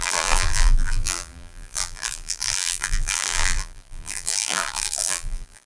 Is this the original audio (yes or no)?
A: no